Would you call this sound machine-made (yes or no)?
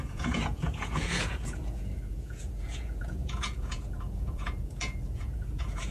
yes